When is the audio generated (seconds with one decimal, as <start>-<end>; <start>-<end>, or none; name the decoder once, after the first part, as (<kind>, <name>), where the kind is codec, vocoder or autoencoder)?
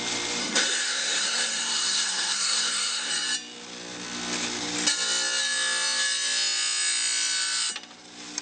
0.4-3.1 (codec, SNAC)